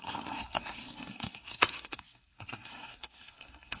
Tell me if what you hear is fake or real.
fake